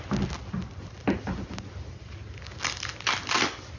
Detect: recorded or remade recorded